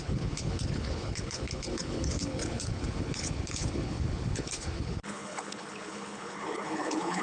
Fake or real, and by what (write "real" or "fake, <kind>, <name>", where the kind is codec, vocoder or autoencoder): fake, codec, HILCodec